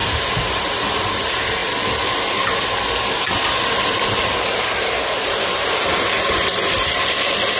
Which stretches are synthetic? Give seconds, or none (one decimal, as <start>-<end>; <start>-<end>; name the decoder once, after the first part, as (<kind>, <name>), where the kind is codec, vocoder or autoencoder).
0.0-1.6 (vocoder, BigVGAN v2); 5.2-7.6